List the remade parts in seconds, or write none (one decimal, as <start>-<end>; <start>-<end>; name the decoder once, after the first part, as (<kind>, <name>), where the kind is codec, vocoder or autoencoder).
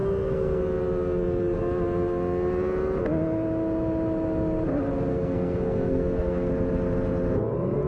0.0-0.6 (codec, SNAC); 5.1-6.5